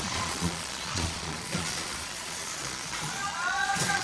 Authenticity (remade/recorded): remade